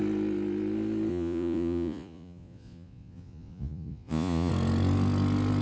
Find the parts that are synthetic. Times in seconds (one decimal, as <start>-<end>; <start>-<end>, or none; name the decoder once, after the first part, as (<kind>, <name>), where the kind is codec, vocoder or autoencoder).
1.1-4.5 (vocoder, Vocos)